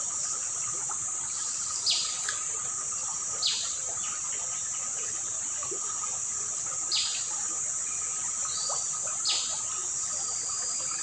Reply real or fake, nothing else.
real